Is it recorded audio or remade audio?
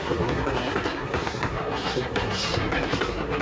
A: remade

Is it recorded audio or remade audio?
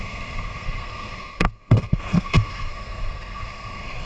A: remade